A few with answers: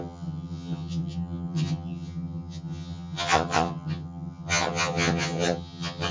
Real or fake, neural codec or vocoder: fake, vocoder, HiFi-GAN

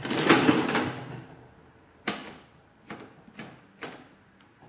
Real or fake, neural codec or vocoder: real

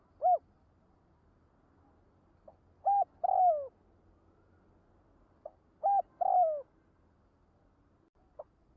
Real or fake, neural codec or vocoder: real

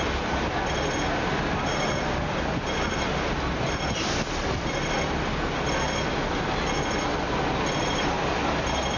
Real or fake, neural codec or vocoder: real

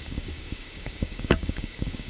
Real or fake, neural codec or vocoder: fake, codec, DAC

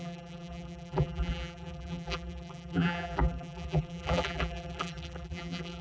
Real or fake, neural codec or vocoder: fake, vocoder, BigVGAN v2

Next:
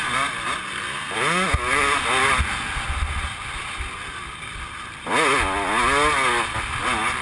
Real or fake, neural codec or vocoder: real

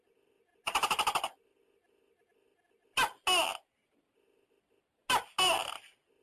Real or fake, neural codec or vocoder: real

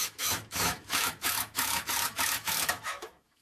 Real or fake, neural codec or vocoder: fake, autoencoder, DAC-VAE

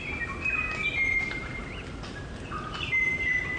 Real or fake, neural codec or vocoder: real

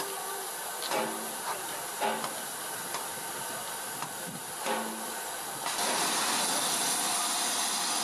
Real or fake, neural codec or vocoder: real